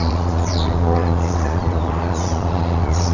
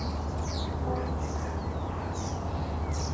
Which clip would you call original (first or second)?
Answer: second